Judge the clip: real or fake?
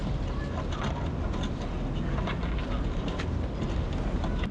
real